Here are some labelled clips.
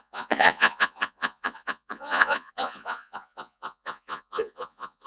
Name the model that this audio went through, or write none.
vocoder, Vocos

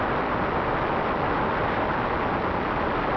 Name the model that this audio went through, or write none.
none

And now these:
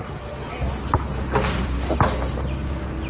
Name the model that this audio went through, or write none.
none